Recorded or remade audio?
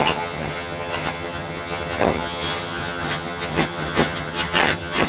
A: remade